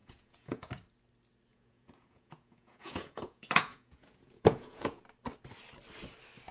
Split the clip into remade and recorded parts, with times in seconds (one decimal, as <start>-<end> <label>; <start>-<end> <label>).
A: 0.0-0.7 remade; 0.7-1.5 recorded; 1.5-5.0 remade; 5.0-6.5 recorded